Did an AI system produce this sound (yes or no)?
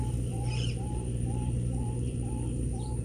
yes